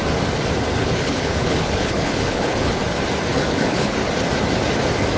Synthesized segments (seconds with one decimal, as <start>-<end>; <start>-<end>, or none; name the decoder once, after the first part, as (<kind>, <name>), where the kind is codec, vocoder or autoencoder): 0.8-2.8 (codec, HILCodec); 3.3-4.0